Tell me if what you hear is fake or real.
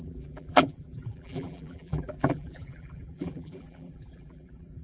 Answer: fake